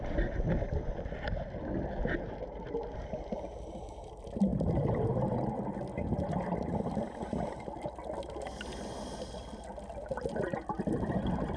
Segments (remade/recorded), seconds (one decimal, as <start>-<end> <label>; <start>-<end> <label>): 0.0-11.6 recorded